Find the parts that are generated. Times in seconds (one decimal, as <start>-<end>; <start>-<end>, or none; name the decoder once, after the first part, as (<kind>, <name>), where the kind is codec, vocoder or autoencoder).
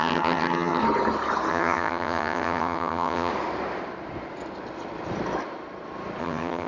0.0-0.8 (vocoder, HiFi-GAN); 1.5-3.3; 6.2-6.7